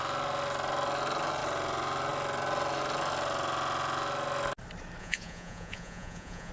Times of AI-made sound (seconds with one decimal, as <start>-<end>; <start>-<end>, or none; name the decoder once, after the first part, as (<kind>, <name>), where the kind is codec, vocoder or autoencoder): 5.0-6.5 (vocoder, Vocos)